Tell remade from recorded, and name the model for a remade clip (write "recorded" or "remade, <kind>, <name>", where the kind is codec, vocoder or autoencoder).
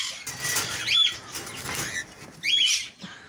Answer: recorded